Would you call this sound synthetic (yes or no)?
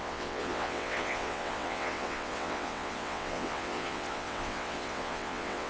yes